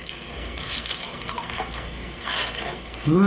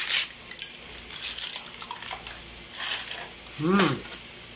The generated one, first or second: first